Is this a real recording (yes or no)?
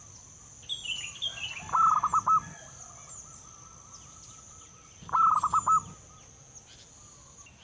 yes